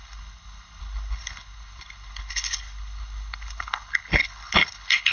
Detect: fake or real fake